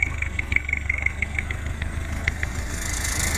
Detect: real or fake fake